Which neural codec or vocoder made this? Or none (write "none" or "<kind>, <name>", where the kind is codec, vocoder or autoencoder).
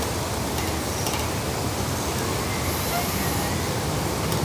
none